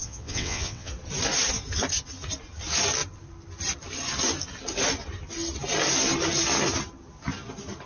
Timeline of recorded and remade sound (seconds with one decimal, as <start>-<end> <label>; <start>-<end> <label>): 0.0-0.9 remade; 0.9-7.9 recorded